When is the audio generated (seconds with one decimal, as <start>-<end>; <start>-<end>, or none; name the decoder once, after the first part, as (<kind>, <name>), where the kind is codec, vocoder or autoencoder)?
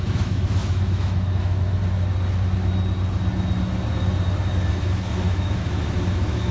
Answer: 0.0-1.8 (autoencoder, DAC-VAE); 4.8-6.5